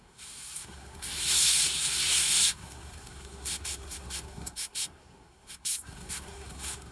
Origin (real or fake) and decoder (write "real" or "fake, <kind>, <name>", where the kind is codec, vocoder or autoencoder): fake, codec, SNAC